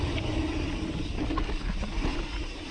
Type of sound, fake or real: real